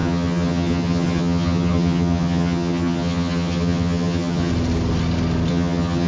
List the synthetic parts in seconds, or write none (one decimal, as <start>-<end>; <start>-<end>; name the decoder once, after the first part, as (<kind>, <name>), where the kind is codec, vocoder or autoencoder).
0.0-4.5 (vocoder, HiFi-GAN); 5.5-6.1